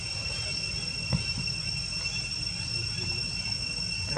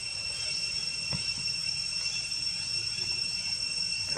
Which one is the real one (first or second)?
first